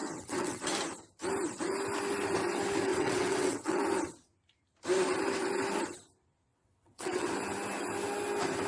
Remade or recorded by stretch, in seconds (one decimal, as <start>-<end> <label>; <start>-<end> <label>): 0.0-0.6 remade; 0.6-2.9 recorded; 2.9-3.8 remade; 3.8-6.5 recorded; 6.5-7.3 remade; 7.3-8.7 recorded